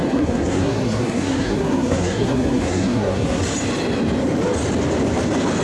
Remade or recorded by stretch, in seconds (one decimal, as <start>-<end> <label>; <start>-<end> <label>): 0.0-3.4 remade; 3.4-5.6 recorded